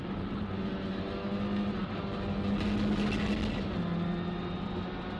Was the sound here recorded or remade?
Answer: recorded